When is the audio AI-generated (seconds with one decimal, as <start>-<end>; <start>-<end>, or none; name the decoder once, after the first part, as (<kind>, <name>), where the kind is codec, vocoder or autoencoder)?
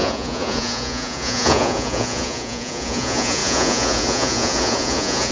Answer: 0.0-5.3 (vocoder, Vocos)